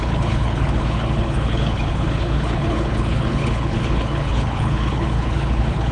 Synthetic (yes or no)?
yes